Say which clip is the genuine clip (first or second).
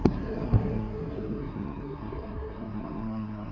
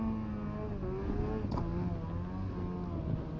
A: second